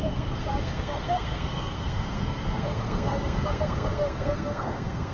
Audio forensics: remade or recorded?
remade